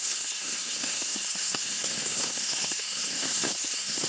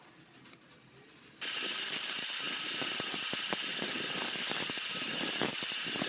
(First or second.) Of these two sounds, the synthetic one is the first